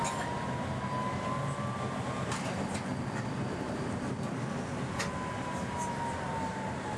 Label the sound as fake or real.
real